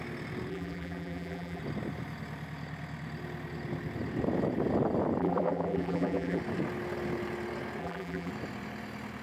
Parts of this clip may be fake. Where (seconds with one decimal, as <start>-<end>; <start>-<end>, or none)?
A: 0.5-1.6; 5.2-6.4; 7.8-8.3